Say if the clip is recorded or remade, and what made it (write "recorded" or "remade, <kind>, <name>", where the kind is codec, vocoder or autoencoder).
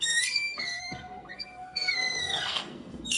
remade, codec, SNAC